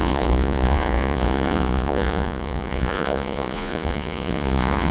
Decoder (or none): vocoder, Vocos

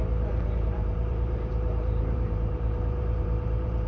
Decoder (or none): vocoder, BigVGAN v2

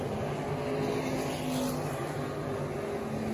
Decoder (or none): none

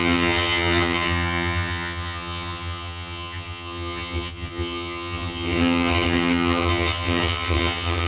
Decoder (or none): vocoder, HiFi-GAN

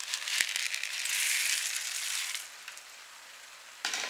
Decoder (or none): none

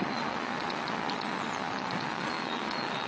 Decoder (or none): vocoder, Vocos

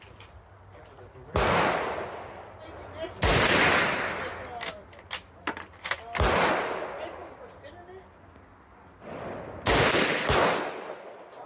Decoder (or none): none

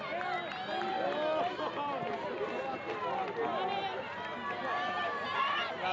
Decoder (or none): none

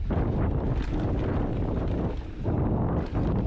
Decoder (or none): none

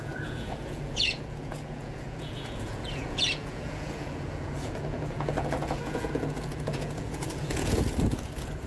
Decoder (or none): vocoder, Vocos